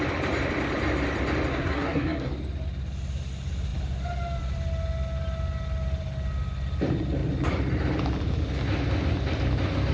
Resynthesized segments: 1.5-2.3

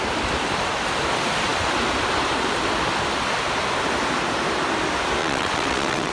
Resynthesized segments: 5.2-6.1